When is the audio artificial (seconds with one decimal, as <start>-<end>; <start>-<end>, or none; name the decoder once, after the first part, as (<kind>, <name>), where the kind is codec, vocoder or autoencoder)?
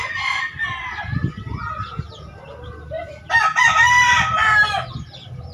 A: none